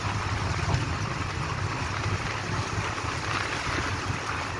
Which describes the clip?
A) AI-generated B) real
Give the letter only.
B